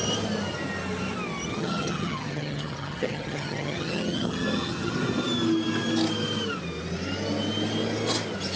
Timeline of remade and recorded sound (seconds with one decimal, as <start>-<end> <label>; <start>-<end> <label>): 0.0-1.5 recorded; 1.5-4.9 remade; 4.9-8.6 recorded